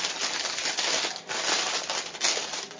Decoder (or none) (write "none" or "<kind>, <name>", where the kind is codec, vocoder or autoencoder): none